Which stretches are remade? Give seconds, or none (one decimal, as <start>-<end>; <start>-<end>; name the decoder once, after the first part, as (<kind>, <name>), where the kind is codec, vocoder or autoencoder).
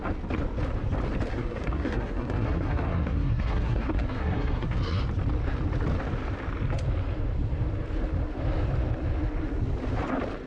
1.3-5.0 (codec, SNAC)